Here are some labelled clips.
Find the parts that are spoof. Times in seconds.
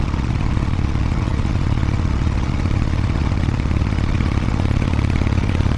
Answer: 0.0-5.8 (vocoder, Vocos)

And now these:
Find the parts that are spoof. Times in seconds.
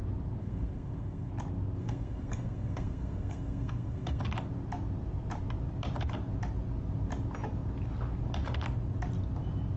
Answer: 0.4-1.3 (codec, SNAC); 1.8-4.2